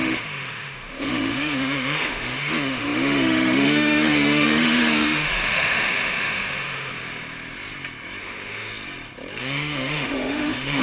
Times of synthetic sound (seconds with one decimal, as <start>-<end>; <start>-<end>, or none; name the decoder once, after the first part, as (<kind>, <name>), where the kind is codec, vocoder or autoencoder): 0.0-6.9 (autoencoder, DAC-VAE); 8.2-8.7; 9.4-10.8